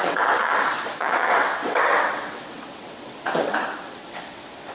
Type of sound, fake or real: fake